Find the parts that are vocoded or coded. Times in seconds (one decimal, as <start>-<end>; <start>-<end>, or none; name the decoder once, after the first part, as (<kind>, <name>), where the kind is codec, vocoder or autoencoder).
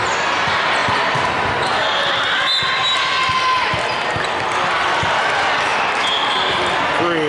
none